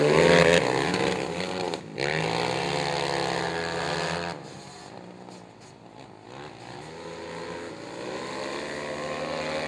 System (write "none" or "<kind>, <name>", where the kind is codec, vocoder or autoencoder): none